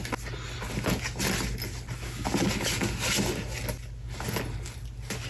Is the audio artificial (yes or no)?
no